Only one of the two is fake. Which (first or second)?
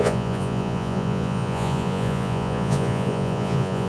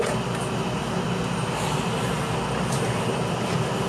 first